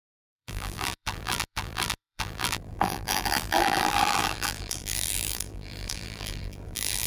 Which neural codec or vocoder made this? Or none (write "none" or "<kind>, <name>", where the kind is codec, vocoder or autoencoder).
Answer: vocoder, BigVGAN v2